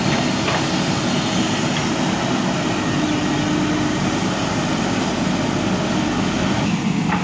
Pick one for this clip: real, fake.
real